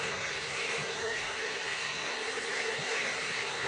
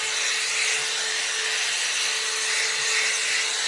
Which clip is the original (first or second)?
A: second